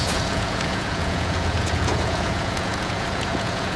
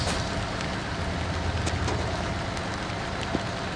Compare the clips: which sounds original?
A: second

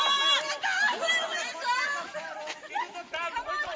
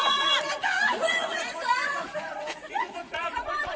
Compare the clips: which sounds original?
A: first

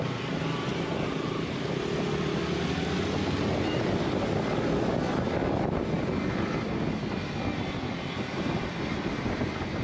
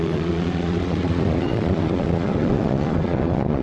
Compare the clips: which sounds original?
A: first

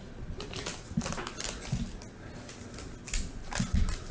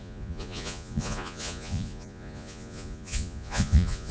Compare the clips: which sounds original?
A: first